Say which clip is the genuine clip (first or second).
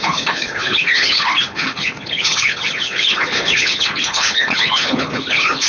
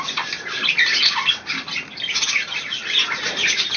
second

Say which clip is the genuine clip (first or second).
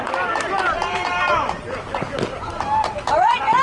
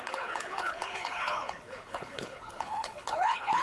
first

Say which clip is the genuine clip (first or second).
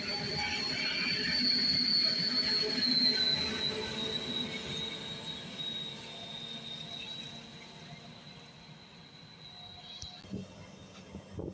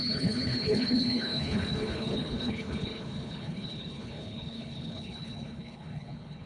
first